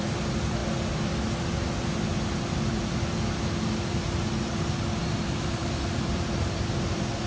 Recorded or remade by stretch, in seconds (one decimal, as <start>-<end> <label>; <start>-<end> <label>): 0.0-0.6 remade; 0.6-5.0 recorded; 5.0-7.3 remade